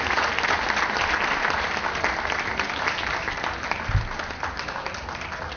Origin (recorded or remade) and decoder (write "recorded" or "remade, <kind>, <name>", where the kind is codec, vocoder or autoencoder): recorded